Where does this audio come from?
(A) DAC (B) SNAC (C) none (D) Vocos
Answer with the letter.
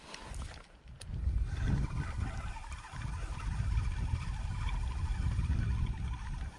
C